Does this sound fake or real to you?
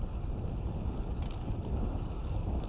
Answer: real